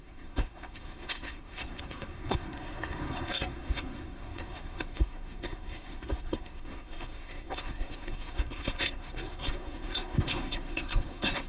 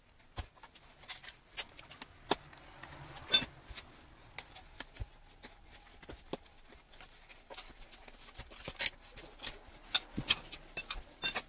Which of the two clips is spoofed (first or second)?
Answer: first